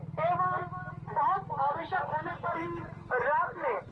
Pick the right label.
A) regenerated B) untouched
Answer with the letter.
B